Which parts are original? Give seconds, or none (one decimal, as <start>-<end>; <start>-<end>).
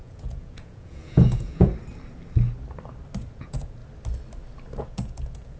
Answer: 1.7-3.3; 3.8-4.8